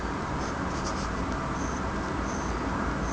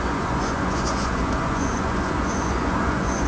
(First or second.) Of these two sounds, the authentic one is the first